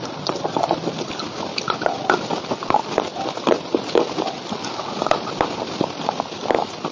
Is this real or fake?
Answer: real